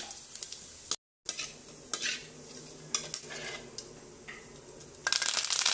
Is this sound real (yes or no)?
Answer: yes